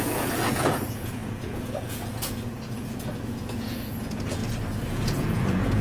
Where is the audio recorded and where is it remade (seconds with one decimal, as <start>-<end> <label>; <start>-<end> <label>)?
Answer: 0.0-4.4 remade; 4.4-4.9 recorded; 4.9-5.8 remade